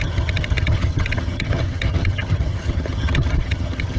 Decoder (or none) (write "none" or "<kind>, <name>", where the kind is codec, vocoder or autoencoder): vocoder, HiFi-GAN